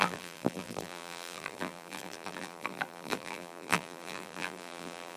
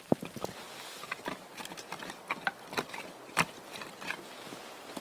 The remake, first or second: first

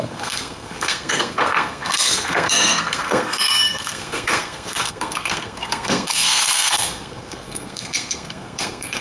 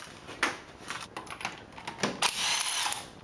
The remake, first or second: first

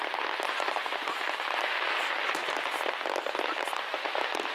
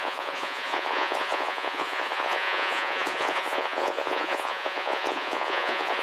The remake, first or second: second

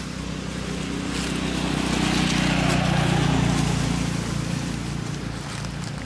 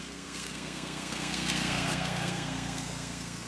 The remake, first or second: second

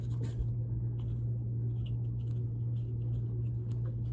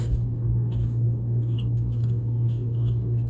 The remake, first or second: second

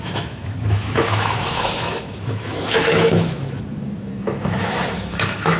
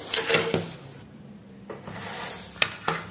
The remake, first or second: first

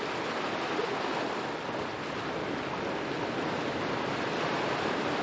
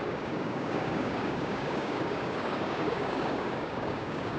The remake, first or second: second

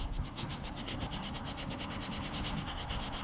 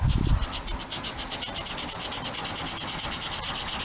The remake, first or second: first